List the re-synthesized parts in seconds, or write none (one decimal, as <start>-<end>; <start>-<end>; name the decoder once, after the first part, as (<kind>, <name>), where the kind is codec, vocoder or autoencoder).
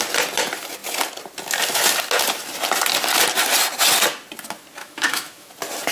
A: 4.8-5.5 (autoencoder, DAC-VAE)